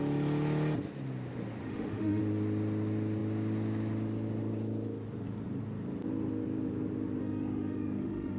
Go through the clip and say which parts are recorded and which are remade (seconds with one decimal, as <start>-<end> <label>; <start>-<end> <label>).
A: 0.0-1.6 recorded; 1.6-2.2 remade; 2.2-7.2 recorded; 7.2-8.4 remade